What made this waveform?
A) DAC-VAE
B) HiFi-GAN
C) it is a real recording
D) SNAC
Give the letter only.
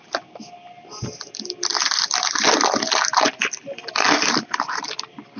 C